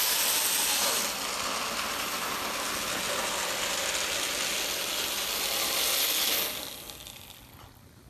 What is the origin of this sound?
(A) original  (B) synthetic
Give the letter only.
A